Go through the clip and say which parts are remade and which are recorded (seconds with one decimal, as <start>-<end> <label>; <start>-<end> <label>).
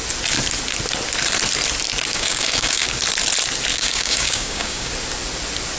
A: 0.0-2.1 recorded; 2.1-3.0 remade; 3.0-3.7 recorded; 3.7-4.9 remade; 4.9-5.8 recorded